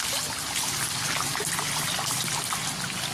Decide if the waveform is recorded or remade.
recorded